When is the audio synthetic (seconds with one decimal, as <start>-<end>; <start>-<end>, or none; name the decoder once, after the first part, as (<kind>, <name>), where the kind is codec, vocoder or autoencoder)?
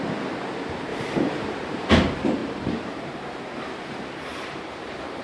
0.9-1.9 (vocoder, BigVGAN v2); 2.4-3.2; 4.3-5.2